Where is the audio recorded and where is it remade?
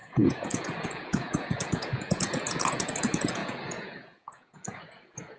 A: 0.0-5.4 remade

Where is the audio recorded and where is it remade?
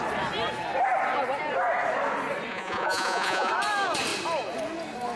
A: 0.0-2.5 recorded; 2.5-3.5 remade; 3.5-5.2 recorded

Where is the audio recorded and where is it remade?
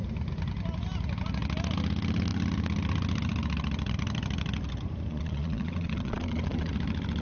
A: 0.0-5.1 recorded; 5.1-6.7 remade; 6.7-7.2 recorded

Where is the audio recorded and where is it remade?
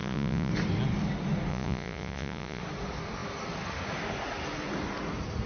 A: 0.0-0.5 remade; 0.5-1.5 recorded; 1.5-2.6 remade; 2.6-5.5 recorded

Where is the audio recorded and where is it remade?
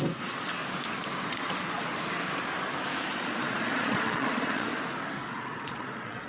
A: 0.0-0.6 remade; 0.6-1.2 recorded; 1.2-1.9 remade; 1.9-3.1 recorded; 3.1-4.7 remade; 4.7-5.2 recorded; 5.2-6.3 remade